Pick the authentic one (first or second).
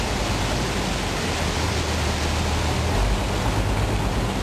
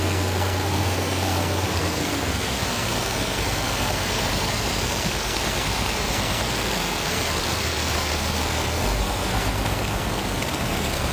first